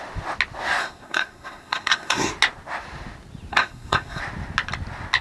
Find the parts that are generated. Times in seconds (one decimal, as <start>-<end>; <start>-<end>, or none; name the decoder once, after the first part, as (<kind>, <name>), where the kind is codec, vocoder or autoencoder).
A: 0.8-2.3 (codec, SNAC); 3.5-4.2